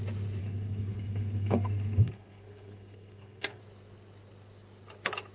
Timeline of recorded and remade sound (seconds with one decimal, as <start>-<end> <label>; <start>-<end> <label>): 0.0-0.4 recorded; 0.4-3.6 remade; 3.6-5.3 recorded